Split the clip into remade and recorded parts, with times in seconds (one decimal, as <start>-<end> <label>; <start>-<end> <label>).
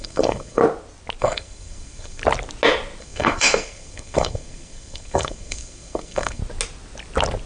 0.0-0.6 remade; 0.6-1.2 recorded; 1.2-2.2 remade; 2.2-3.0 recorded; 3.0-6.4 remade; 6.4-7.5 recorded